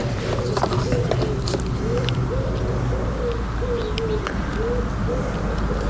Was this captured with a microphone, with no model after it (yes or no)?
yes